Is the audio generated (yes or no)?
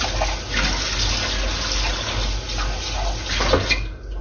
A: no